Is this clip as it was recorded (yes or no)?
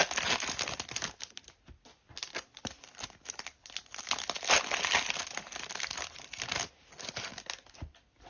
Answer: yes